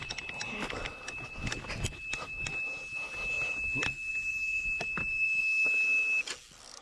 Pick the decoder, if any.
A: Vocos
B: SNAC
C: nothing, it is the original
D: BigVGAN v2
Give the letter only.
C